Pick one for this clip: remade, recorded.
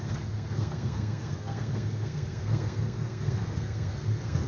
remade